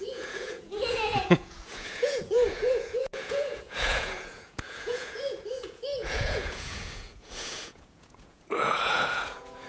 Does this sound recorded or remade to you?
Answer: remade